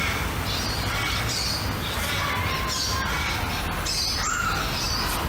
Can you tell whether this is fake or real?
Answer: real